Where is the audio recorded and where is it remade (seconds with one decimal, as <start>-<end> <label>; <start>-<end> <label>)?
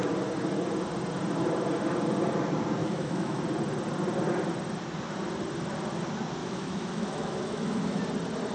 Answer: 0.0-2.8 recorded; 2.8-3.4 remade; 3.4-6.4 recorded; 6.4-8.0 remade; 8.0-8.5 recorded